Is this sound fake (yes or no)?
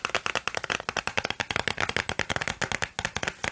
no